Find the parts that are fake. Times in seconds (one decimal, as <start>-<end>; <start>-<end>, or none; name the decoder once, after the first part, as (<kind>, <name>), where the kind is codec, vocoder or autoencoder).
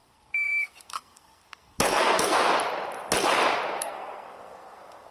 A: 0.0-2.5 (codec, SNAC); 3.8-5.1